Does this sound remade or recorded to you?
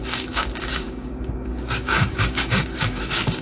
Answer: remade